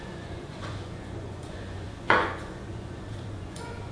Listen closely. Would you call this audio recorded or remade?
remade